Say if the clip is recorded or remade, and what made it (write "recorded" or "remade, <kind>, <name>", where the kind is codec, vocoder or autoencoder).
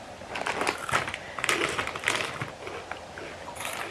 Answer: recorded